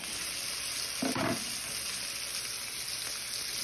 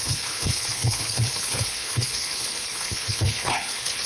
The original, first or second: first